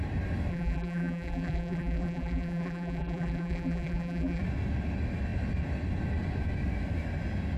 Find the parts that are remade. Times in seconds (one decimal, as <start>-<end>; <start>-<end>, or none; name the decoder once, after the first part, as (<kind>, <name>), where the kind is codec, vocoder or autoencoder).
0.5-4.4 (vocoder, BigVGAN v2)